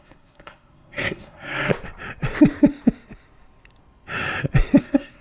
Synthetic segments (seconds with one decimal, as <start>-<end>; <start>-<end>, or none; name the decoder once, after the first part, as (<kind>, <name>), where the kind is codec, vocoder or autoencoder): 0.0-1.7 (codec, SNAC); 4.8-5.2